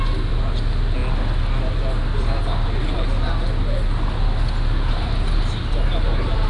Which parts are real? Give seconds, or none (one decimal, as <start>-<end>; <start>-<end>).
0.0-6.5